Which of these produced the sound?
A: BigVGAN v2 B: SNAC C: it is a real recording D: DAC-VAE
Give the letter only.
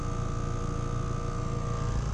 C